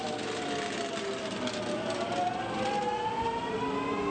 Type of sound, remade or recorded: recorded